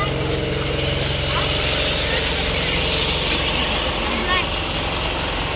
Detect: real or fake real